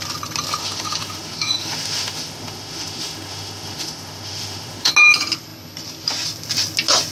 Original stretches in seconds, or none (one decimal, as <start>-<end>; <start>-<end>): 0.0-0.6; 4.9-7.1

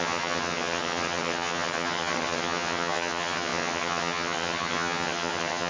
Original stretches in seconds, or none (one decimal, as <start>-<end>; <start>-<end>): none